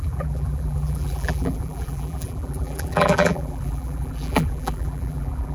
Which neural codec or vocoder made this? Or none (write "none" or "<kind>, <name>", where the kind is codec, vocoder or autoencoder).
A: vocoder, BigVGAN v2